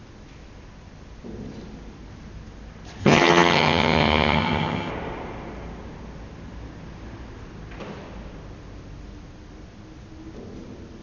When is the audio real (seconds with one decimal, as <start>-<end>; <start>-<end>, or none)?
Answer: 0.0-3.0; 4.9-11.0

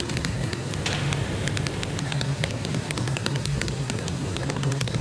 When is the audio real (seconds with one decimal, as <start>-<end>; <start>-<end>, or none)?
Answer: 0.7-2.0

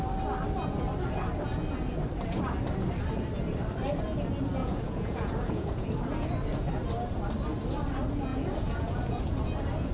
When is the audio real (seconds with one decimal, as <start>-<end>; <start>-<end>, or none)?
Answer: 0.0-4.6; 6.3-8.3; 9.2-9.9

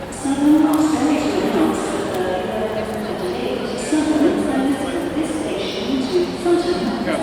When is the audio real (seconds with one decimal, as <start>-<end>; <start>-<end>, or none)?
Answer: 0.0-0.9; 1.6-7.2

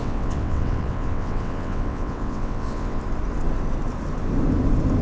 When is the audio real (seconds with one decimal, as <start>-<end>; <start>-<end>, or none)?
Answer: 3.0-5.0

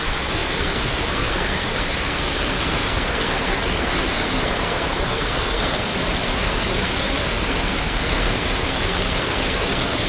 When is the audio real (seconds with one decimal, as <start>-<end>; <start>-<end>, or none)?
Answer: 5.9-6.4

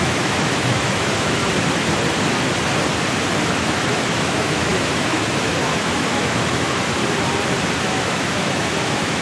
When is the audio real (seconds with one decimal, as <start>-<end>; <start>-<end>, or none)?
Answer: 1.4-3.4; 7.0-7.8